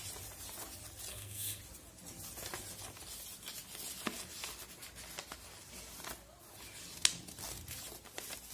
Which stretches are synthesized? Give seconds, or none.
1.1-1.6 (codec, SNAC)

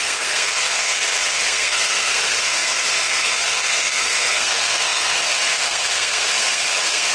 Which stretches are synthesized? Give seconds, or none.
0.0-7.1 (codec, SNAC)

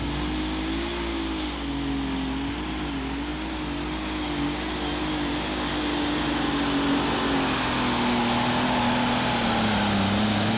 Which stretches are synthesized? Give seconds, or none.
none

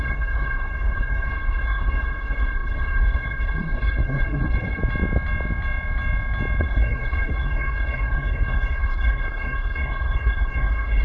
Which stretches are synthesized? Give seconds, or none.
0.0-4.8 (codec, SNAC); 6.6-11.0